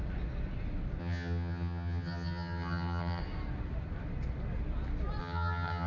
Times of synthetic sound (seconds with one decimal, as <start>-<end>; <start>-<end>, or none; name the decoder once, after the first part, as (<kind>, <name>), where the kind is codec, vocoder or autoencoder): 1.0-3.2 (vocoder, HiFi-GAN); 5.2-5.9

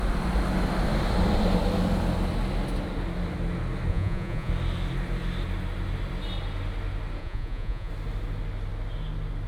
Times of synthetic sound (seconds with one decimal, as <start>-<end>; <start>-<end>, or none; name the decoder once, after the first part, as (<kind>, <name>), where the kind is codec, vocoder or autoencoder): 3.9-4.5 (vocoder, Vocos); 7.2-7.9

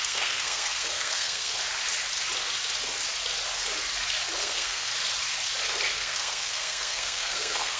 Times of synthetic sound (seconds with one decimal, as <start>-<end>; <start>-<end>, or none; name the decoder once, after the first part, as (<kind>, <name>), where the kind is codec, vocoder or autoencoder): 0.0-1.5 (codec, SNAC); 4.4-4.9; 5.9-7.8

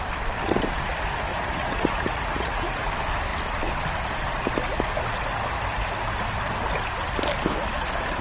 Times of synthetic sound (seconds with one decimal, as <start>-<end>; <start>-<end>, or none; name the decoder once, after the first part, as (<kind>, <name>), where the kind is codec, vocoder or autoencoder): 1.3-2.9 (vocoder, Vocos)

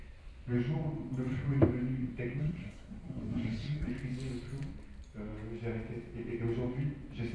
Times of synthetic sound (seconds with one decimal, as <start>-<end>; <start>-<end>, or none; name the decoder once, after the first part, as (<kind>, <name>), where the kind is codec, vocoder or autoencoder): 2.4-3.9 (codec, SNAC)

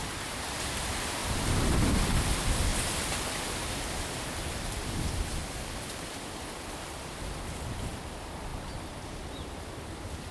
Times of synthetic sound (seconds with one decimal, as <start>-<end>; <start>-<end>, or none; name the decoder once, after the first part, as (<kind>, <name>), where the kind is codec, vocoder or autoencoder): 0.0-2.7 (vocoder, BigVGAN v2); 3.8-5.4; 6.1-10.3

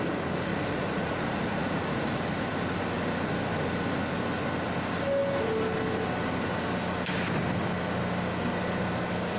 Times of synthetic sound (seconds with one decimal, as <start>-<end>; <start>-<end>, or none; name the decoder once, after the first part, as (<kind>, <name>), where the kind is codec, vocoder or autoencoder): 0.5-2.2 (vocoder, Vocos)

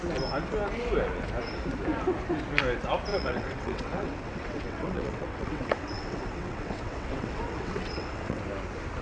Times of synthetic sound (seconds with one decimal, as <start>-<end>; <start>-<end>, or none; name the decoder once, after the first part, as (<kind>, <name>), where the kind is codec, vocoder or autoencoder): 3.1-8.4 (vocoder, WaveNeXt)